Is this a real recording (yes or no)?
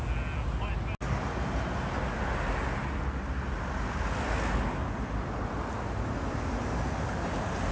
yes